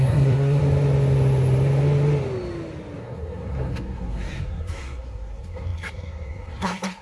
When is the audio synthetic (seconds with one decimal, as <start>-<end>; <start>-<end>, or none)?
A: 0.0-0.6; 3.0-7.0